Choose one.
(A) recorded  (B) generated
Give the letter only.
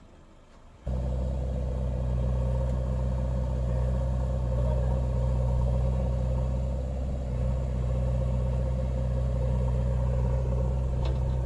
A